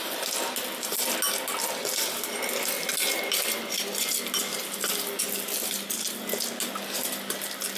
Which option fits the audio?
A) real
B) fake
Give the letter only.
A